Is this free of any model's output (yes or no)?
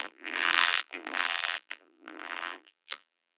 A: no